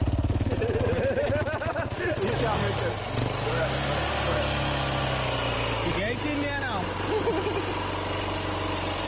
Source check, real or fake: real